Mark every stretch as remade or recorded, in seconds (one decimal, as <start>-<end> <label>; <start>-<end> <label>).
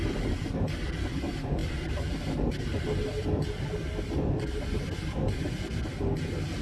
0.0-1.6 recorded; 1.6-5.6 remade; 5.6-6.6 recorded